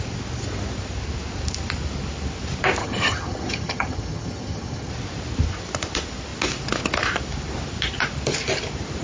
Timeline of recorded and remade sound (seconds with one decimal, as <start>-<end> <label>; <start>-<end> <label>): 0.0-2.8 recorded; 2.8-4.9 remade; 4.9-9.0 recorded